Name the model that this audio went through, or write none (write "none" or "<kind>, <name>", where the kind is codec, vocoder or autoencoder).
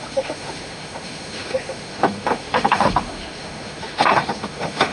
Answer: autoencoder, DAC-VAE